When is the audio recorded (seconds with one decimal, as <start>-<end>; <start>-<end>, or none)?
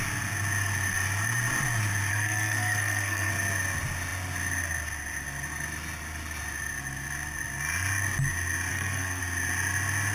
0.0-2.1; 3.3-8.7; 9.2-10.1